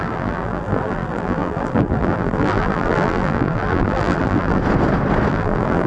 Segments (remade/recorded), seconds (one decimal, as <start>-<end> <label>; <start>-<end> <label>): 0.0-4.6 remade; 4.6-5.3 recorded; 5.3-5.9 remade